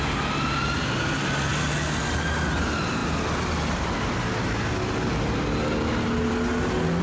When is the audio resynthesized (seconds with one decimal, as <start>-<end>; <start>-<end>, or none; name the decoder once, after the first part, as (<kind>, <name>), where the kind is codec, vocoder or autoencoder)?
none